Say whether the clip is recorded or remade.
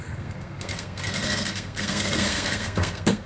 remade